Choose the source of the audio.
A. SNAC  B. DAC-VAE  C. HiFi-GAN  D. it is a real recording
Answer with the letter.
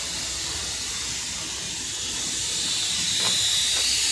D